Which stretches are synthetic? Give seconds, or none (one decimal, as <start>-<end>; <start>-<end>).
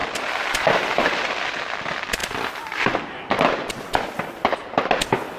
0.0-1.3; 2.2-3.7